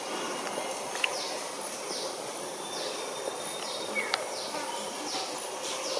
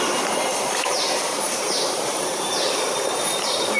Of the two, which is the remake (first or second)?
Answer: second